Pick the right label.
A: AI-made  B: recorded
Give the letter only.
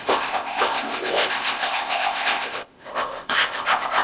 A